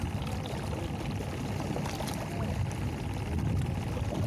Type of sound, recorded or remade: recorded